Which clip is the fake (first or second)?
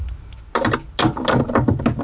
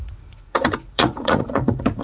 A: second